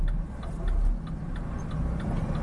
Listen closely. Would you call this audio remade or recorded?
recorded